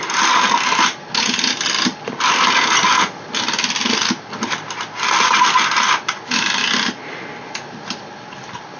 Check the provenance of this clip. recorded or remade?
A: recorded